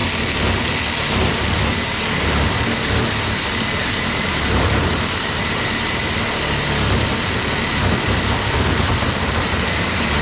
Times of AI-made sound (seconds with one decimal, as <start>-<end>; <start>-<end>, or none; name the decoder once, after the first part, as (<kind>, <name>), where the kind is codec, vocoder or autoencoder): 3.8-6.0 (vocoder, BigVGAN v2)